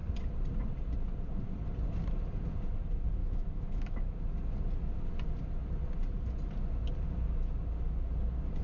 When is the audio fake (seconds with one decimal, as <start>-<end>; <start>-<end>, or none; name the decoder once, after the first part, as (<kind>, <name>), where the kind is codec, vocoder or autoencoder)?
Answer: 3.2-4.2 (autoencoder, DAC-VAE)